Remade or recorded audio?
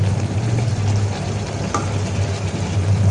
recorded